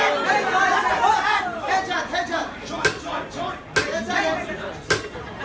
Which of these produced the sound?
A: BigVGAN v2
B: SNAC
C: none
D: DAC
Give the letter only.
C